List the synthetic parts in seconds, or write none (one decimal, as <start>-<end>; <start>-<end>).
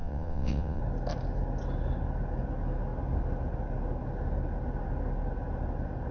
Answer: 0.0-0.8